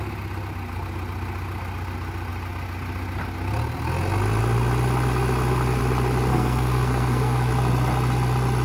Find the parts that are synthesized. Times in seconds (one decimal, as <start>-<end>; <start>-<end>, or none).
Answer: 6.3-7.5